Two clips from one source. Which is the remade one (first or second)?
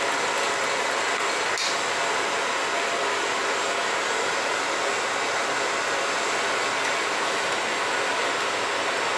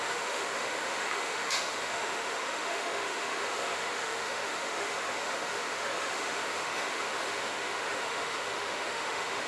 second